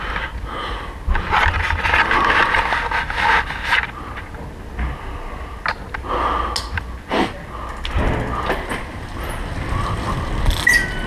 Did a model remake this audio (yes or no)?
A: no